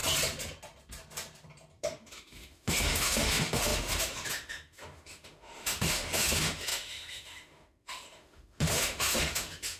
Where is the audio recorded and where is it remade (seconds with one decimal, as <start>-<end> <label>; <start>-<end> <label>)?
0.0-1.8 recorded; 1.8-9.8 remade

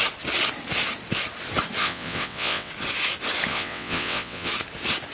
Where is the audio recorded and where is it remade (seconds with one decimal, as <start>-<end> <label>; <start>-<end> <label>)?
0.0-1.8 recorded; 1.8-2.7 remade; 2.7-3.5 recorded; 3.5-4.5 remade; 4.5-5.1 recorded

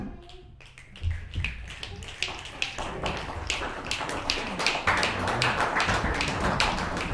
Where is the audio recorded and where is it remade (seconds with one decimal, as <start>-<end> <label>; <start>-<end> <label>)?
0.0-3.3 recorded; 3.3-7.1 remade

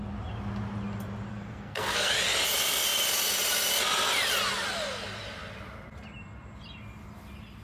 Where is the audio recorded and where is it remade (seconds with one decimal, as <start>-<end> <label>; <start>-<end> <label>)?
0.0-1.3 recorded; 1.3-2.1 remade; 2.1-7.6 recorded

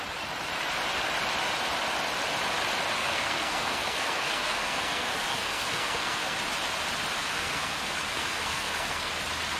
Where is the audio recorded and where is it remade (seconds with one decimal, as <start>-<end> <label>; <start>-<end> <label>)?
0.0-3.0 recorded; 3.0-6.4 remade; 6.4-7.2 recorded; 7.2-9.1 remade; 9.1-9.6 recorded

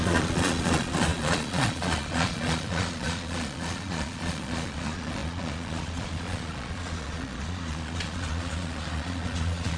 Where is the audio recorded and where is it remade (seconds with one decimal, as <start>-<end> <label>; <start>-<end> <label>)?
0.0-9.8 remade